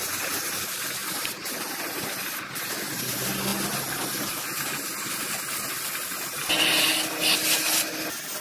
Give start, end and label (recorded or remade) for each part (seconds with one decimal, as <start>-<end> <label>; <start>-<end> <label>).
0.0-8.4 recorded